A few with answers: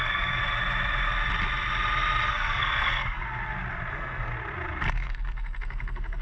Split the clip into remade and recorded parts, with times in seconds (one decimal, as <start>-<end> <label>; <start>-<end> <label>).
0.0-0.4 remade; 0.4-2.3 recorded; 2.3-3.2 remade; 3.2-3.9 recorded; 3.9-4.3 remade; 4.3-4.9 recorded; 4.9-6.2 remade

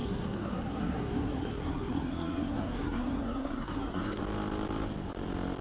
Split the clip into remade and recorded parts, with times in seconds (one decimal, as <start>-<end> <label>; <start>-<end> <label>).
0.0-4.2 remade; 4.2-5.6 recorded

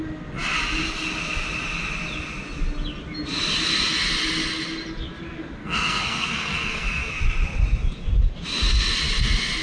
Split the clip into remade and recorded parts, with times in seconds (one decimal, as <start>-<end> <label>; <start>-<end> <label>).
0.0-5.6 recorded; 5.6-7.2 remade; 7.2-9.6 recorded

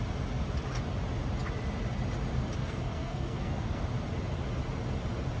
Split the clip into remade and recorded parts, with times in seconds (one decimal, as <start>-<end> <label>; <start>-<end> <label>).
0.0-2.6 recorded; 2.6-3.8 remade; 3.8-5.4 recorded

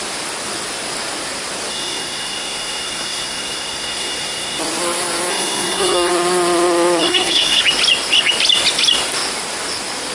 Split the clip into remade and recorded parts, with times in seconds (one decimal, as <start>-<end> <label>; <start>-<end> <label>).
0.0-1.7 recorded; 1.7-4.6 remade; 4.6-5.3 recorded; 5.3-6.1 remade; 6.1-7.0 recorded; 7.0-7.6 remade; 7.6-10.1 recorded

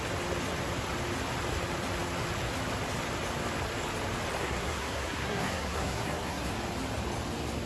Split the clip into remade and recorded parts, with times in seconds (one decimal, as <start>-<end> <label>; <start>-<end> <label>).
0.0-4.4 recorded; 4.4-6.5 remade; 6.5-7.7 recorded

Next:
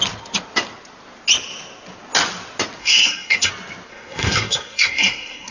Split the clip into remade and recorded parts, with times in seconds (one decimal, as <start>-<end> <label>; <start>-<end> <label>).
0.0-2.8 recorded; 2.8-3.5 remade; 3.5-3.9 recorded; 3.9-5.5 remade